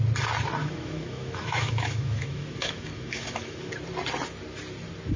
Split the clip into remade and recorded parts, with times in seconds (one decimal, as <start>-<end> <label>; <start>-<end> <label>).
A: 0.0-0.6 recorded; 0.6-3.7 remade; 3.7-5.2 recorded